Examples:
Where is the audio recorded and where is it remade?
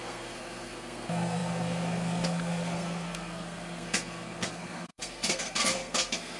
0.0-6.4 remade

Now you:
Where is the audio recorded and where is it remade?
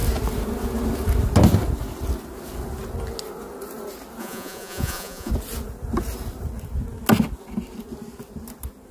0.0-4.2 recorded; 4.2-5.3 remade; 5.3-8.9 recorded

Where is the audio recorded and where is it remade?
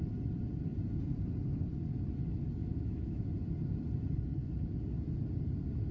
0.0-2.6 recorded; 2.6-3.2 remade; 3.2-5.9 recorded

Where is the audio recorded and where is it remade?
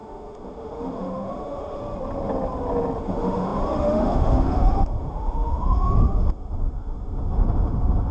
0.0-1.8 remade; 1.8-3.0 recorded; 3.0-8.1 remade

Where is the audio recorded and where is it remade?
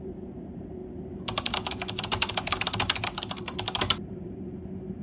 0.0-0.8 remade; 0.8-3.8 recorded; 3.8-5.0 remade